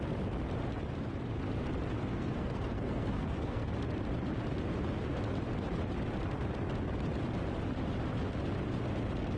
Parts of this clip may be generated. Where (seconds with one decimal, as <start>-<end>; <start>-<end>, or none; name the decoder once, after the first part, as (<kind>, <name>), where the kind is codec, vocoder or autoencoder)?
2.1-3.7 (codec, SNAC)